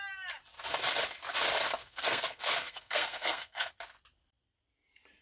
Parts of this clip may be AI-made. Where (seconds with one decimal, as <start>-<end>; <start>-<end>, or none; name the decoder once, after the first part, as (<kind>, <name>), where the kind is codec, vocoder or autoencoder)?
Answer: 1.8-3.7 (codec, SNAC)